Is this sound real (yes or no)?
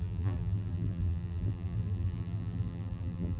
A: no